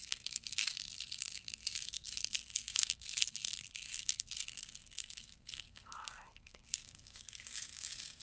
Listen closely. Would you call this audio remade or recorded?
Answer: remade